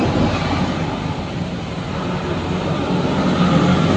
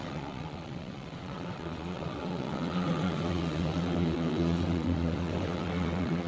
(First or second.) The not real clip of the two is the second